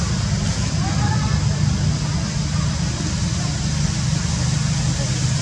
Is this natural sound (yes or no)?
yes